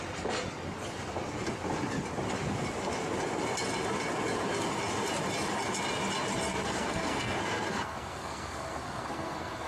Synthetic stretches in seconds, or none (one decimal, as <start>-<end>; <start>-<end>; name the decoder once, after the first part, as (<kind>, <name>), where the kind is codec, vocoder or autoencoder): 6.5-9.7 (codec, SNAC)